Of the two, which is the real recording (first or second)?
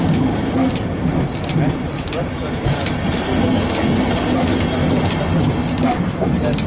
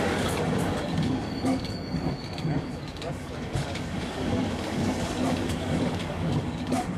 first